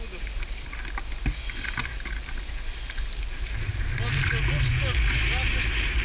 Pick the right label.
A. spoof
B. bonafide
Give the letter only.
B